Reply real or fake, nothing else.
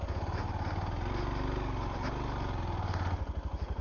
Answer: real